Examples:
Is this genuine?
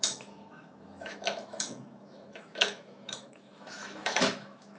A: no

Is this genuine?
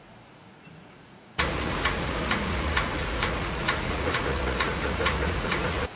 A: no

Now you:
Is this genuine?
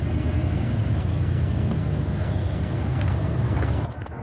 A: no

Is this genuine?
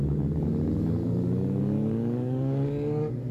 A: no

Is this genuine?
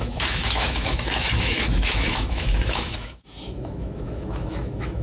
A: no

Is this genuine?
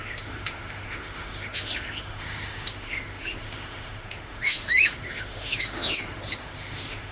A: no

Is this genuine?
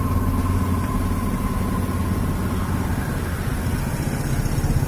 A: yes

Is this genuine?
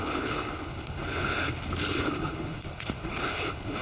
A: no